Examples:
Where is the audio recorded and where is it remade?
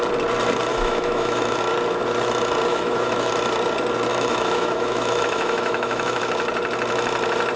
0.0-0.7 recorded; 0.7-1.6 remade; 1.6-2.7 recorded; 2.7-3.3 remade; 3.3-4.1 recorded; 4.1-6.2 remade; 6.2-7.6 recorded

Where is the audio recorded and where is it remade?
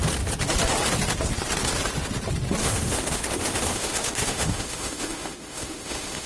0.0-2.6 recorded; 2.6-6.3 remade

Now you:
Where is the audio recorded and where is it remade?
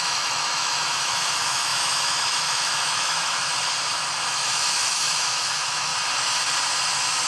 0.0-3.5 remade; 3.5-4.3 recorded; 4.3-5.9 remade; 5.9-7.3 recorded